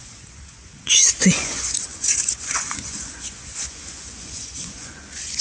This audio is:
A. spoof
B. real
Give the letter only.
A